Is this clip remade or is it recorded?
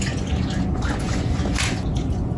remade